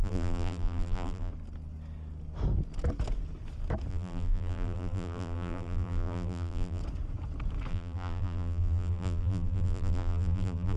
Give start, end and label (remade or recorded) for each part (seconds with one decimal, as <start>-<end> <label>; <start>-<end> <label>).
0.0-1.3 remade; 1.3-3.9 recorded; 3.9-6.8 remade; 6.8-7.7 recorded; 7.7-10.8 remade